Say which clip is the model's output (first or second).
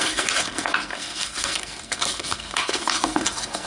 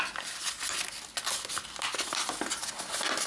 first